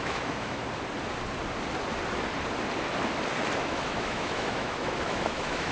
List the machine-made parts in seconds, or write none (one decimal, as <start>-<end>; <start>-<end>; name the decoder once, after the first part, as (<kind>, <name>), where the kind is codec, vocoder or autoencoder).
0.0-0.6 (autoencoder, DAC-VAE); 3.6-5.7